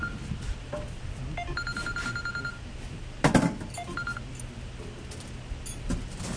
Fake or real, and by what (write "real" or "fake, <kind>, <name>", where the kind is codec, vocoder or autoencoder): real